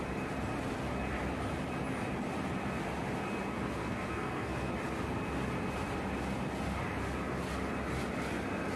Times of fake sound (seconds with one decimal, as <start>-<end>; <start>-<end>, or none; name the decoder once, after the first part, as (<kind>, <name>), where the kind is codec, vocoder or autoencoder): 3.8-4.7 (codec, SNAC)